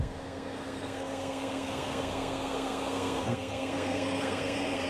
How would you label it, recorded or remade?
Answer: remade